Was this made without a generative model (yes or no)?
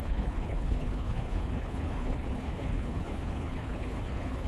no